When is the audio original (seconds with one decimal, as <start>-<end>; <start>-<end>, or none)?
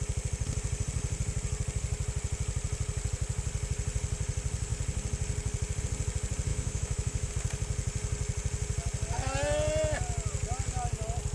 0.0-6.5; 7.3-11.3